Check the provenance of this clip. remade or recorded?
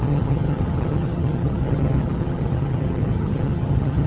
remade